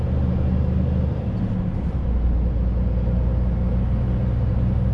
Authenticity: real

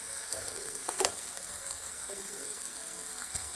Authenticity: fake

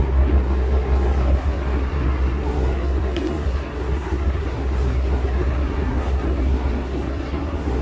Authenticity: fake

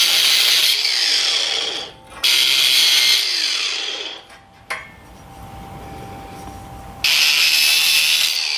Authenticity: real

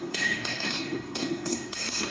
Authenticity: fake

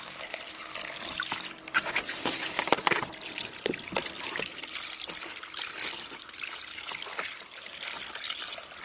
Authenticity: real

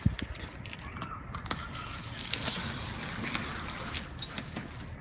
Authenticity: real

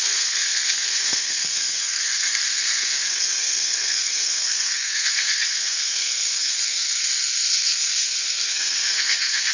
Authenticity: fake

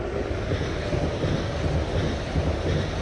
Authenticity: real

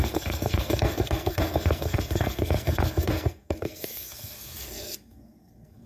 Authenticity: fake